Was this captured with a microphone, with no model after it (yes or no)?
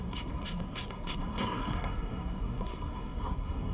no